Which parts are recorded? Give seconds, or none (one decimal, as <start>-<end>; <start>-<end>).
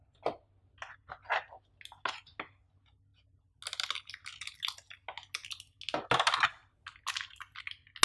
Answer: 0.0-8.0